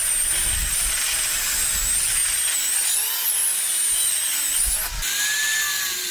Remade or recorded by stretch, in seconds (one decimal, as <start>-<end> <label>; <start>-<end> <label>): 0.0-6.1 recorded